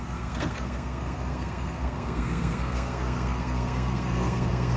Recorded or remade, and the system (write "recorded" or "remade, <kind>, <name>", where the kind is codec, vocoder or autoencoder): remade, codec, SNAC